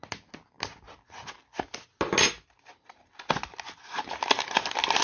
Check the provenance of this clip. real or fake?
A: real